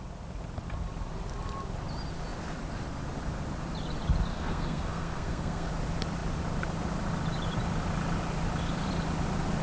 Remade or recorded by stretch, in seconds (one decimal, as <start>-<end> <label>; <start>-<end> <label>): 0.0-4.3 recorded; 4.3-5.7 remade; 5.7-9.6 recorded